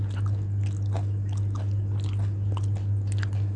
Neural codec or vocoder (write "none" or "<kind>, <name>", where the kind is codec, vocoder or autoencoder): none